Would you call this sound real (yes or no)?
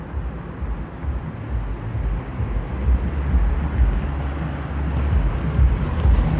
yes